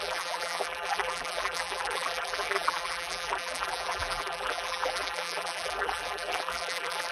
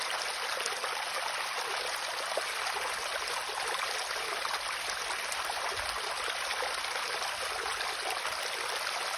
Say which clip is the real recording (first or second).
second